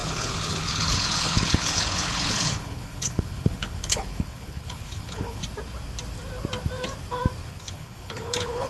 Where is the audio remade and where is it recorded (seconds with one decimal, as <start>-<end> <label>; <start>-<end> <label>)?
0.0-5.4 remade; 5.4-7.5 recorded; 7.5-8.7 remade